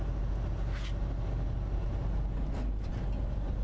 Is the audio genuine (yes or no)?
yes